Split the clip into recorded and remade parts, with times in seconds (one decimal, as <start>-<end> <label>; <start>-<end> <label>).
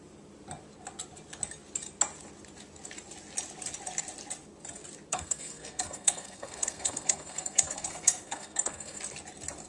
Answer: 0.0-5.1 recorded; 5.1-9.0 remade; 9.0-9.7 recorded